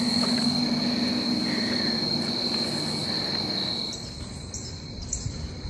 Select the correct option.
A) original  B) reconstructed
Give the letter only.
A